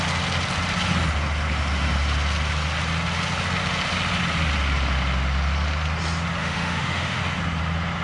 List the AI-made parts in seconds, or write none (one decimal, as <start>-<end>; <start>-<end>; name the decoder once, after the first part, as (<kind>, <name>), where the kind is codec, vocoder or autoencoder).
6.4-7.2 (autoencoder, DAC-VAE)